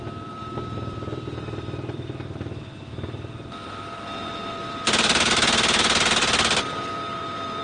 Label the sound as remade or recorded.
remade